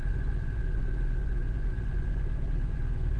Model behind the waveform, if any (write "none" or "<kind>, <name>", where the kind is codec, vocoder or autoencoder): vocoder, Vocos